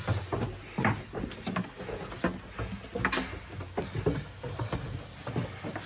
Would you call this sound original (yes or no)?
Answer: yes